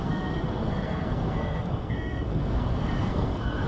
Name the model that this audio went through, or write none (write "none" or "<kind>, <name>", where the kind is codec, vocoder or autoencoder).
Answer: codec, SNAC